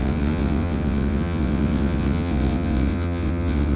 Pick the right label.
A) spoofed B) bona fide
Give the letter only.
A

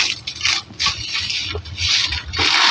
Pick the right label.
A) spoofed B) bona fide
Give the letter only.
B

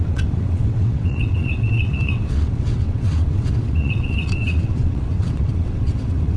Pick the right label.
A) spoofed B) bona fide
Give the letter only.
A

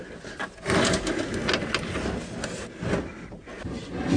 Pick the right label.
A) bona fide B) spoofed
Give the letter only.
A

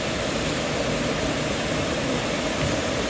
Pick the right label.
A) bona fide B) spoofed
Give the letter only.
A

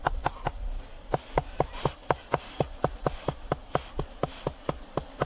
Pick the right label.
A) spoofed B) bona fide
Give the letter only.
B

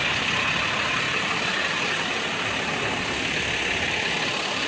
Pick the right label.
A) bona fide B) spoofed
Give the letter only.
A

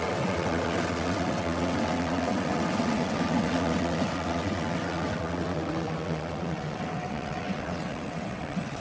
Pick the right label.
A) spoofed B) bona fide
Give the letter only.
A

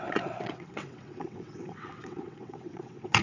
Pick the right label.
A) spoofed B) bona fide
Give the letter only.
A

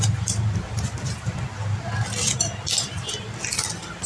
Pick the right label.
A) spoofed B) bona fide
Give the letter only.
B